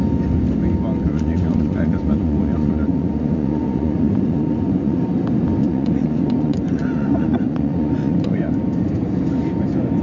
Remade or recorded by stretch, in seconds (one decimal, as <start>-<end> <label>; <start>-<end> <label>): 0.0-1.1 recorded; 1.1-5.0 remade; 5.0-5.6 recorded; 5.6-8.5 remade; 8.5-10.0 recorded